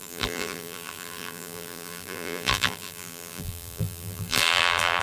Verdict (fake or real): fake